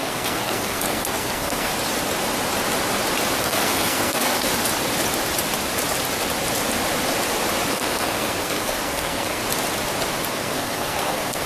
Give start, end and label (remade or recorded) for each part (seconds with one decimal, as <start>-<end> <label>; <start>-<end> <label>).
0.0-1.7 remade; 1.7-3.4 recorded; 3.4-4.5 remade; 4.5-7.7 recorded; 7.7-9.4 remade; 9.4-10.3 recorded; 10.3-11.5 remade